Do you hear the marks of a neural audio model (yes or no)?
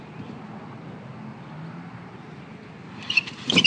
no